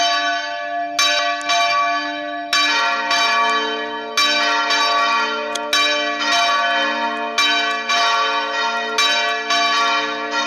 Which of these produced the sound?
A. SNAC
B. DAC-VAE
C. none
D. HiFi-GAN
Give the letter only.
C